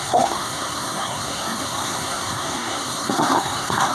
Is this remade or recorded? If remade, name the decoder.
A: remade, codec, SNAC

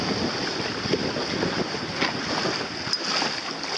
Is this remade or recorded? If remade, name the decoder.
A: recorded